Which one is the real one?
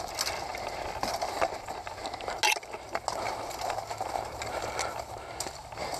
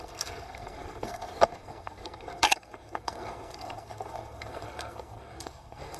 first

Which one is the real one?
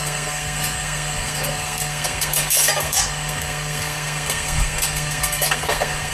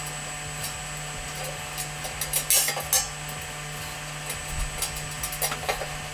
second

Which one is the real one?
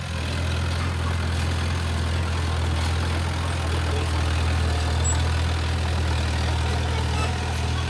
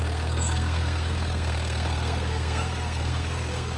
first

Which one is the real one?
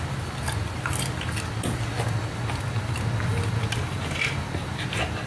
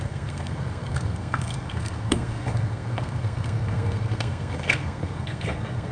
first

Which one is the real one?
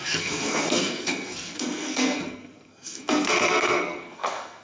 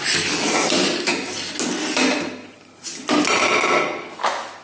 second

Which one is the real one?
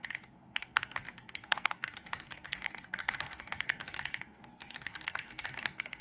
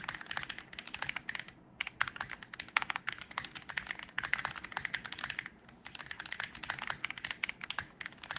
second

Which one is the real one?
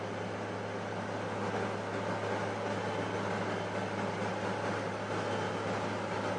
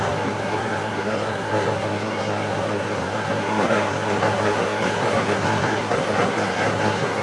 first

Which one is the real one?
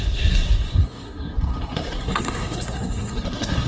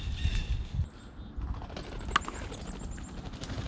second